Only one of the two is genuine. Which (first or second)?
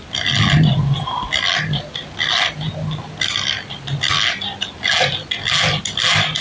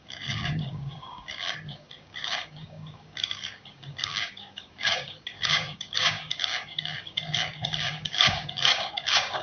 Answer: first